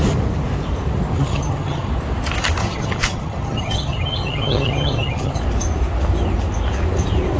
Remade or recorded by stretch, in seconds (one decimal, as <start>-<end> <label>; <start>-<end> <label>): 0.0-1.1 recorded; 1.1-1.9 remade; 1.9-2.6 recorded; 2.6-5.4 remade; 5.4-7.4 recorded